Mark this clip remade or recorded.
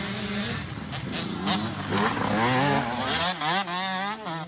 recorded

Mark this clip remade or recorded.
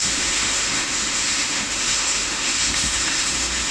remade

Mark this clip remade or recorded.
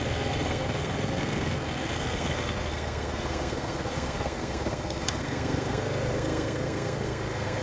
remade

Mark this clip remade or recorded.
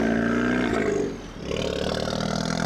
recorded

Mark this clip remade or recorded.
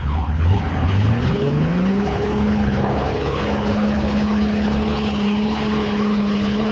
remade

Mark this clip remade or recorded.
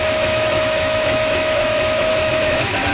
remade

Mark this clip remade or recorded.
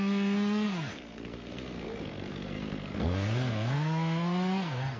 remade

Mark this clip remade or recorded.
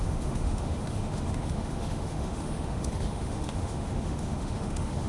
remade